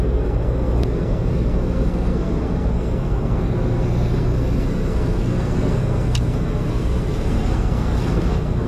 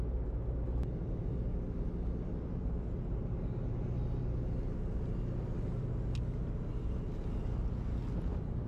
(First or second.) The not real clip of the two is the first